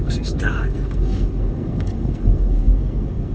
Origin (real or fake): fake